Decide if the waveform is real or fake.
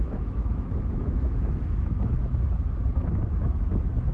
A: fake